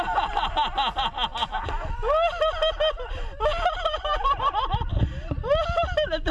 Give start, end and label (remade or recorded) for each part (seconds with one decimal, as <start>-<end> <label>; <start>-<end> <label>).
0.0-6.3 recorded